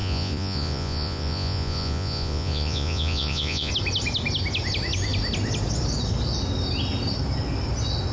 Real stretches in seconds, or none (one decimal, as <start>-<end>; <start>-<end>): 3.7-8.1